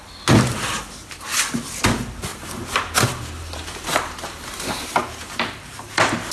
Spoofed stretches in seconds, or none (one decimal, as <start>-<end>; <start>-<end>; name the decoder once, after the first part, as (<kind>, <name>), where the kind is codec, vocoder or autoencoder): 2.3-4.8 (vocoder, BigVGAN v2)

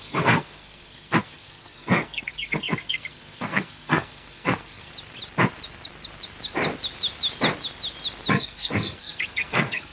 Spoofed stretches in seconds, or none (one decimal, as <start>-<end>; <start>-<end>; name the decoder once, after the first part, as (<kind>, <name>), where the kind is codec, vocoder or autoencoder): 0.0-4.9 (codec, SNAC); 8.3-9.9

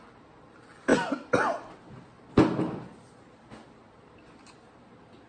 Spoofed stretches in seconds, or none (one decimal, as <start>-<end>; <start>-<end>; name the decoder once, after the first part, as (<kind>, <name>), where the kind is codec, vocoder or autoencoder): none

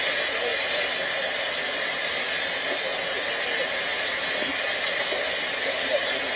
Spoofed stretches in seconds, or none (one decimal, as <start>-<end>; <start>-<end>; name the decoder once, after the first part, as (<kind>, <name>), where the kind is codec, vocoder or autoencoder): none

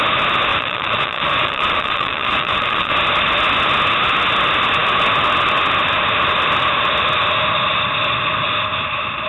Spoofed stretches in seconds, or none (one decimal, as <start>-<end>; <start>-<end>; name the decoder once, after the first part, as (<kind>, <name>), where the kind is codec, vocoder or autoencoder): 0.5-2.9 (vocoder, Vocos)

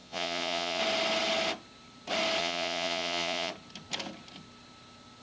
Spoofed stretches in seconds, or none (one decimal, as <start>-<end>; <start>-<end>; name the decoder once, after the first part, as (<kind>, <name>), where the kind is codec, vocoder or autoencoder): 0.0-0.8 (vocoder, Vocos); 2.4-3.5